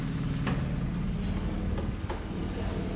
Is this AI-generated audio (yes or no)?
no